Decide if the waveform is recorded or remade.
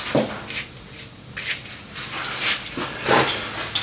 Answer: recorded